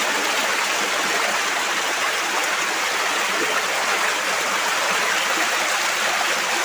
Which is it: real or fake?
real